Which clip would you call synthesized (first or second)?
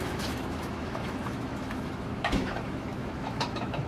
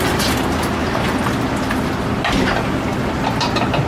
first